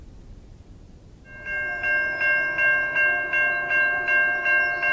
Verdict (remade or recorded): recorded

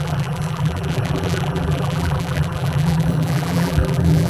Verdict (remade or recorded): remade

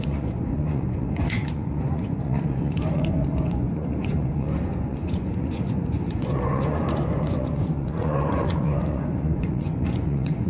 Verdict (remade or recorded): remade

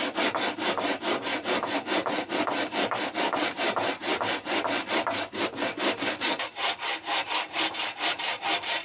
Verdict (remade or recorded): remade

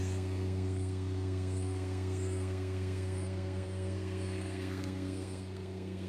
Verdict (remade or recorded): remade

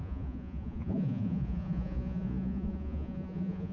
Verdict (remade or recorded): remade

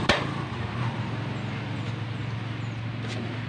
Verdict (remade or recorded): recorded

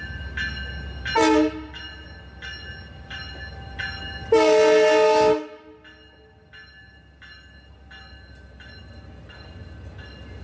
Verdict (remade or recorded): recorded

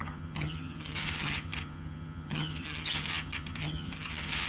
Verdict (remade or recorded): remade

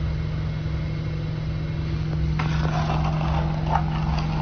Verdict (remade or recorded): recorded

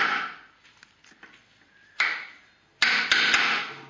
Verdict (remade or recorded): recorded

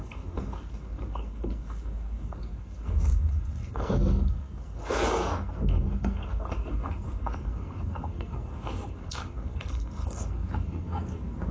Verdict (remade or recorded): remade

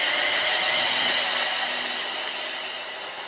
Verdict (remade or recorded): recorded